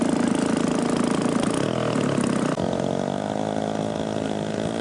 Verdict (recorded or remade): recorded